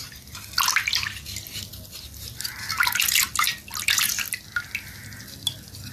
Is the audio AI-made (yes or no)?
no